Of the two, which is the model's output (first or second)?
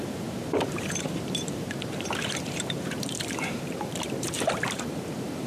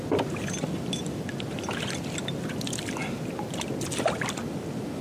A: first